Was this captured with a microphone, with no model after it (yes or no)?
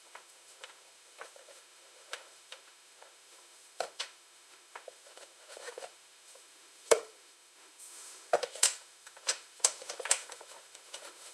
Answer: no